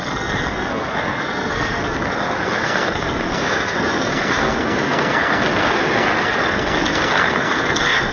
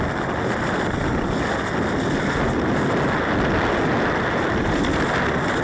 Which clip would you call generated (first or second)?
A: first